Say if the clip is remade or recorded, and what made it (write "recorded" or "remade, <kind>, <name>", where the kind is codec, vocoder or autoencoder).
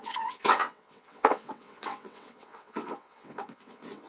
remade, vocoder, WaveNeXt